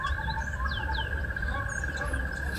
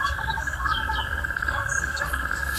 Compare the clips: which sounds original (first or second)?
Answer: first